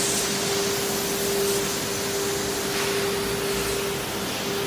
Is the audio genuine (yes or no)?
yes